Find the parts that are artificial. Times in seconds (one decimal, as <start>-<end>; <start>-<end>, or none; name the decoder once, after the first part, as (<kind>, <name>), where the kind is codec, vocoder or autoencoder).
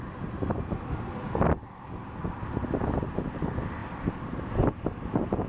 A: none